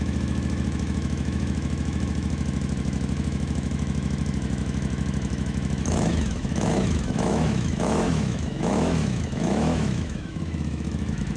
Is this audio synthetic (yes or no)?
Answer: yes